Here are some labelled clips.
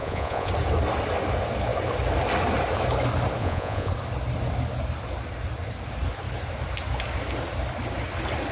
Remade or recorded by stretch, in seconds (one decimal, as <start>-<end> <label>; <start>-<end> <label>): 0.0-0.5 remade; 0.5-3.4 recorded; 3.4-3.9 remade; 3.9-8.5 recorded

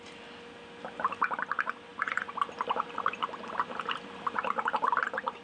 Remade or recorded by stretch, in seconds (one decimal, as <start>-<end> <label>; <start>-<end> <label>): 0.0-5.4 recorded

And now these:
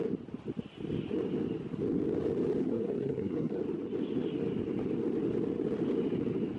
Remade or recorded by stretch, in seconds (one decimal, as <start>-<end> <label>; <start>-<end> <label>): 0.0-2.6 recorded; 2.6-3.6 remade; 3.6-6.6 recorded

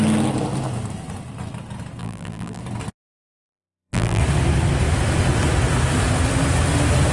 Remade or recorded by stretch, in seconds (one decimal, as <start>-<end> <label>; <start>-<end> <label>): 0.0-2.0 recorded; 2.0-2.6 remade; 2.6-3.4 recorded; 3.4-4.2 remade; 4.2-7.1 recorded

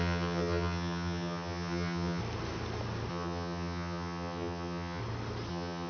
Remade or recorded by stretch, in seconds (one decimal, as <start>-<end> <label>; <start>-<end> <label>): 0.0-2.2 remade; 2.2-3.1 recorded; 3.1-5.0 remade; 5.0-5.5 recorded; 5.5-5.9 remade

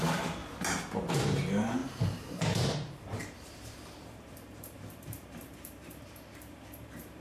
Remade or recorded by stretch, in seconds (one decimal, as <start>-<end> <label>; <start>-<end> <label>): 0.0-0.4 remade; 0.4-1.1 recorded; 1.1-7.2 remade

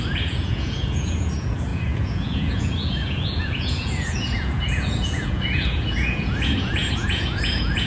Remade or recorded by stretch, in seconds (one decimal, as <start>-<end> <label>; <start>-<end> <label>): 0.0-7.9 remade